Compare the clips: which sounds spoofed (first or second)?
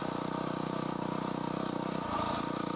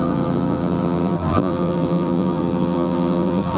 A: second